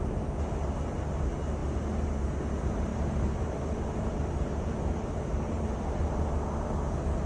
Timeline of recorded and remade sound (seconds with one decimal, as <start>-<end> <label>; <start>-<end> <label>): 0.0-7.3 remade